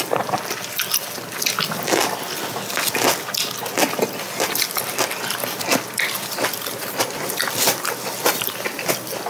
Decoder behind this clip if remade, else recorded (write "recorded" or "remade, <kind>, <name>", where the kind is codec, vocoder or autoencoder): recorded